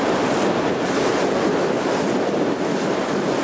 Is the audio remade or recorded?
recorded